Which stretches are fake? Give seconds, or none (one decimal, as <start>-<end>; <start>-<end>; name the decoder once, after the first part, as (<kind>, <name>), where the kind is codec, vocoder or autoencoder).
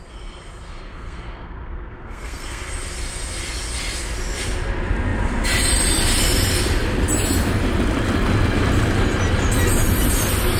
0.8-2.6 (codec, SNAC)